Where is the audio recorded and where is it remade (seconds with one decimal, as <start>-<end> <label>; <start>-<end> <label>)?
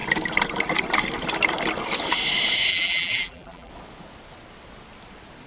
0.0-2.7 recorded; 2.7-3.7 remade; 3.7-5.5 recorded